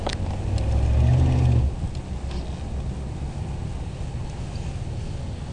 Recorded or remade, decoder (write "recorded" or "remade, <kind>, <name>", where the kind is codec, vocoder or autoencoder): recorded